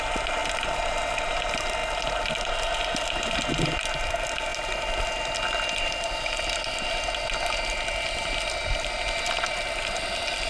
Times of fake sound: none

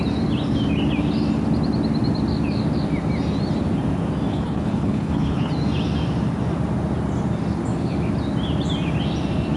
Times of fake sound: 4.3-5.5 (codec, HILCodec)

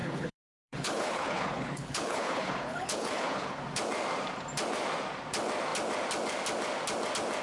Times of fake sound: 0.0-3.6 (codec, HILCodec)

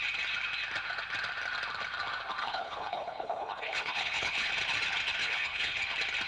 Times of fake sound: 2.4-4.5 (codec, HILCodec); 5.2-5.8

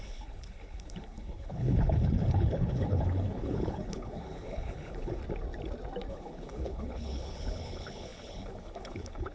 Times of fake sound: 0.0-5.2 (codec, HILCodec); 6.1-9.3

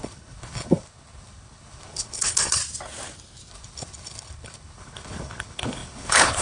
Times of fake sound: 0.0-2.6 (codec, HILCodec); 3.5-6.4

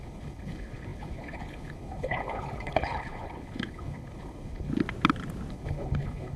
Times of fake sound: 0.0-4.7 (codec, HILCodec); 5.5-6.4